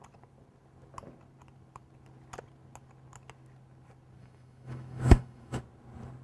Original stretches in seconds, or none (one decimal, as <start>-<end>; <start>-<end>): 0.0-4.2; 5.6-6.2